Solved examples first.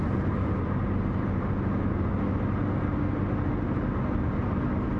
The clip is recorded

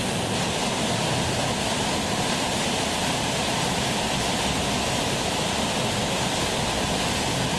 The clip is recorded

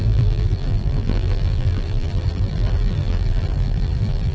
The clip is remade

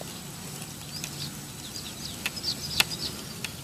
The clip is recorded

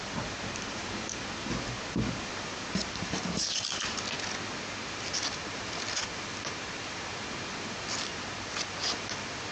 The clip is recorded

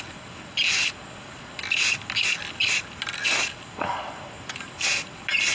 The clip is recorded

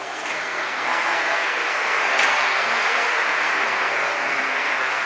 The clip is remade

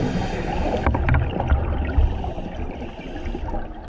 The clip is recorded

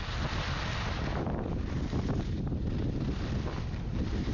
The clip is recorded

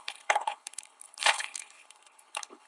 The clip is remade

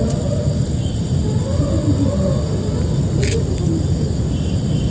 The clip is recorded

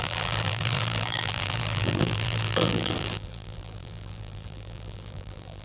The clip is remade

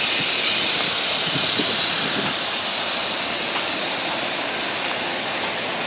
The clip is recorded